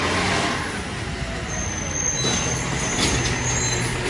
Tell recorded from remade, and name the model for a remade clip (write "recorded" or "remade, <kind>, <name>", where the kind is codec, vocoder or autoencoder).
recorded